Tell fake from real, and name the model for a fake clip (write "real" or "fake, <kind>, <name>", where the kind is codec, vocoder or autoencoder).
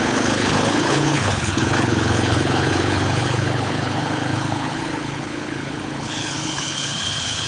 fake, codec, HILCodec